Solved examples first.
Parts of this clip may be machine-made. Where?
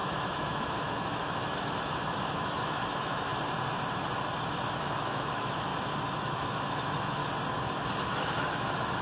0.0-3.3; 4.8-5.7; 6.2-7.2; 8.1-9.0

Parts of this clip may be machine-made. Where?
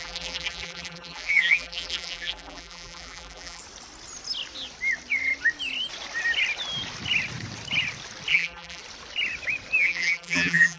0.0-3.6; 8.3-8.8; 9.8-10.8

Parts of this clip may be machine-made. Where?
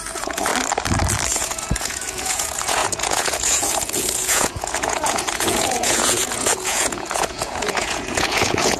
0.0-0.5; 1.3-8.8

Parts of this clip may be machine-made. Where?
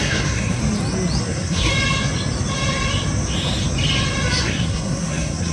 0.0-0.6; 1.2-1.7; 4.4-5.5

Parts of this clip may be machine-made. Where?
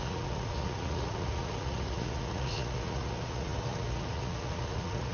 0.0-5.1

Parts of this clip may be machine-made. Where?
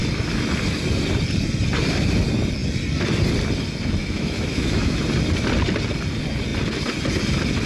4.0-5.0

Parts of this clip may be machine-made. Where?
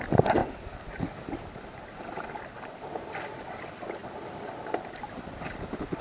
none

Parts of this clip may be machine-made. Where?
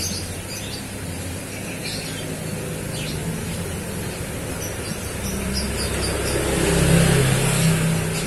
none